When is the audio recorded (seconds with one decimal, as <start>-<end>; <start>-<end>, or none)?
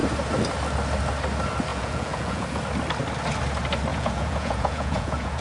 0.0-1.7; 2.6-3.9